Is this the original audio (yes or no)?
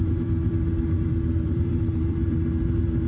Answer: no